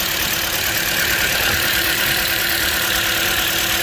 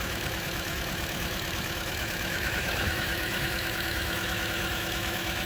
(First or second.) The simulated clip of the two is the second